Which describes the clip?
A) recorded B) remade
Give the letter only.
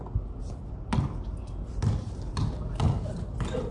A